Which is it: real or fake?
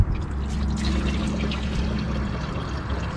real